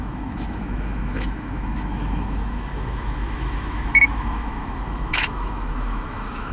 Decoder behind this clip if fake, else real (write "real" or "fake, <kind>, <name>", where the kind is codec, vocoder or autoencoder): fake, autoencoder, DAC-VAE